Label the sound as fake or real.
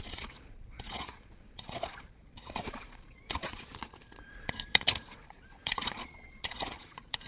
fake